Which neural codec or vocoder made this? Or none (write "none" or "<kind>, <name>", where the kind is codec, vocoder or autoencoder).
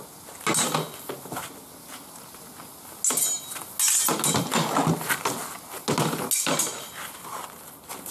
none